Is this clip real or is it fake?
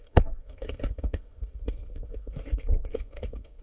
fake